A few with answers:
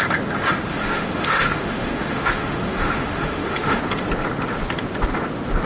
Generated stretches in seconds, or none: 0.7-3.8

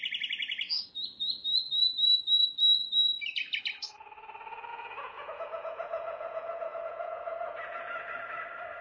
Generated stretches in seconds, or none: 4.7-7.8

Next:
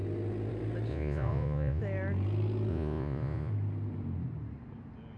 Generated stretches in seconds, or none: 0.9-1.8; 2.7-3.5

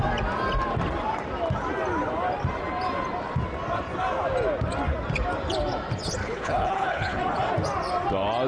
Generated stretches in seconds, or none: 6.2-7.2

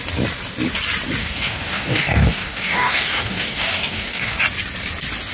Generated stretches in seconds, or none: 1.2-4.4

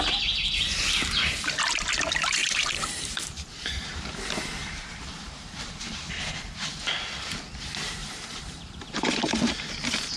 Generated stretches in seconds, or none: 2.4-6.7; 8.0-9.5

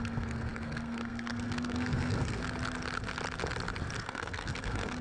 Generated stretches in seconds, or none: 0.0-2.4; 4.0-5.0